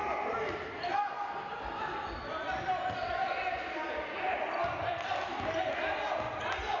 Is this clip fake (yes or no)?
no